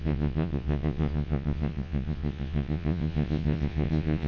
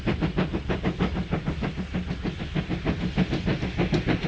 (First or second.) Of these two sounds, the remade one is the first